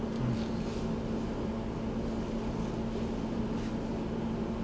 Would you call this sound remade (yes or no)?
no